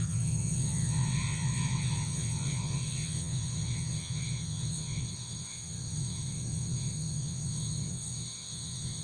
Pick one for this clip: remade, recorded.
remade